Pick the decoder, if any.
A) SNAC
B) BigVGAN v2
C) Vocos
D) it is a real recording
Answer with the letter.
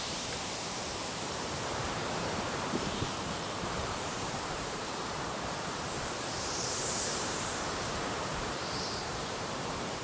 B